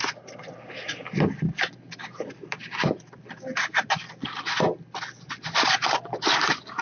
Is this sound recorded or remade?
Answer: recorded